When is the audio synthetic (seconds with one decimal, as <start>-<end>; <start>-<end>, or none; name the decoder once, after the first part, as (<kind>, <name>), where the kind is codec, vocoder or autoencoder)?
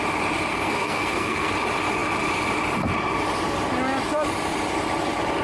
0.5-1.5 (codec, SNAC)